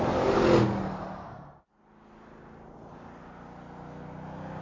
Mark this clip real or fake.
real